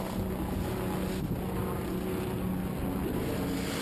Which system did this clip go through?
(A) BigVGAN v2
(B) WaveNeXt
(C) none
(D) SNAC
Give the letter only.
C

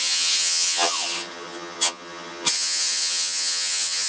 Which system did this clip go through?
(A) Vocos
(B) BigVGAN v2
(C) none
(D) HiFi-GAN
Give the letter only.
D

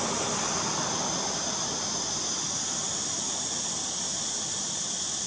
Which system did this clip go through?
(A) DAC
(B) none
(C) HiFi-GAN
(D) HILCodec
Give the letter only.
B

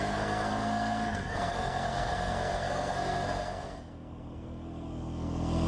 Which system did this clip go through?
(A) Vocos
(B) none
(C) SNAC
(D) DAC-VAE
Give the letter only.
C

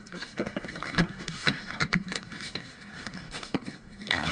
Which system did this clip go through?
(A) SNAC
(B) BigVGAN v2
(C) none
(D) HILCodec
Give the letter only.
A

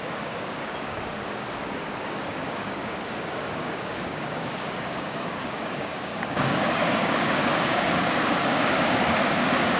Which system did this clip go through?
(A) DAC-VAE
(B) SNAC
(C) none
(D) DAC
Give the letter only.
D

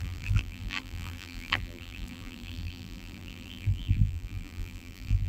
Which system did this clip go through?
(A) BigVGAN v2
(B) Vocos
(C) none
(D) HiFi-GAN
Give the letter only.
A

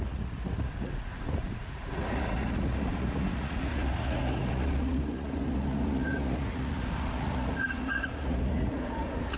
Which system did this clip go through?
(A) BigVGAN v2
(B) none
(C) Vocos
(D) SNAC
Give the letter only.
C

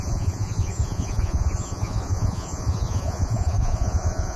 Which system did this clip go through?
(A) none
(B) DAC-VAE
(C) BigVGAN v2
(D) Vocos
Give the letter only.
D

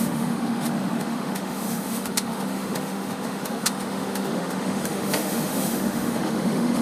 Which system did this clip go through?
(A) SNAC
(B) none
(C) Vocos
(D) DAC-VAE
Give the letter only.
D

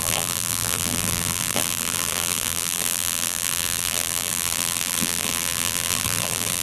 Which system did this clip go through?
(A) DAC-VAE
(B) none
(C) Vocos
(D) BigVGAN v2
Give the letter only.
D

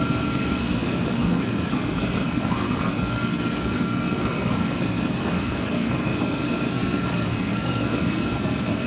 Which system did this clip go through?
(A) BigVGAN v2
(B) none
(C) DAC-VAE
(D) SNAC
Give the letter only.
D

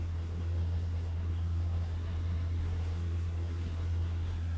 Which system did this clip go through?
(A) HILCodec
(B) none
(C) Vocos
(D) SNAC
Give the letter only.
D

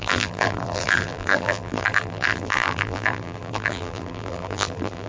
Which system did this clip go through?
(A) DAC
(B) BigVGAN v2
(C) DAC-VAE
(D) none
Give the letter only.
B